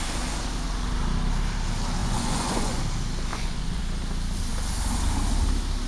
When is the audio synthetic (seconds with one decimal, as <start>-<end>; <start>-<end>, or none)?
2.0-2.8; 3.3-3.8